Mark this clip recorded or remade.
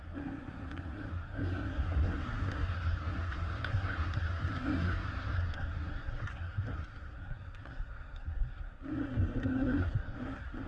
remade